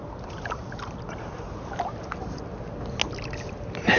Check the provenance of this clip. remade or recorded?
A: recorded